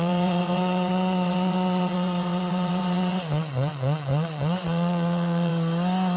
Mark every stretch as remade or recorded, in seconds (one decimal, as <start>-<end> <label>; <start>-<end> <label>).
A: 0.0-5.5 remade; 5.5-6.2 recorded